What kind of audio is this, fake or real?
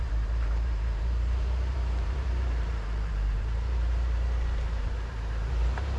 fake